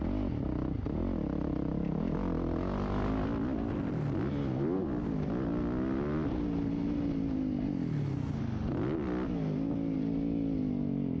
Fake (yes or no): no